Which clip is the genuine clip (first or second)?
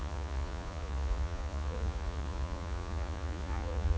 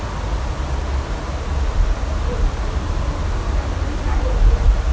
second